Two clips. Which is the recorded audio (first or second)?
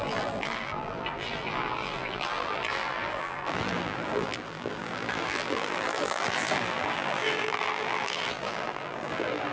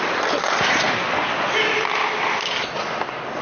second